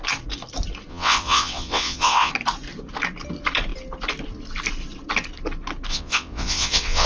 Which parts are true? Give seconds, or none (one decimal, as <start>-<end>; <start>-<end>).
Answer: 0.0-0.9; 2.3-5.9